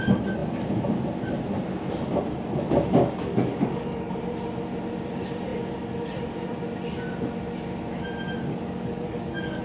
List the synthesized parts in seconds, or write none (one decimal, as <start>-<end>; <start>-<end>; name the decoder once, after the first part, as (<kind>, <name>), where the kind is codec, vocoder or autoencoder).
3.0-4.1 (codec, DAC); 8.5-9.6